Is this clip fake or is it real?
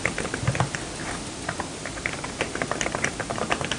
real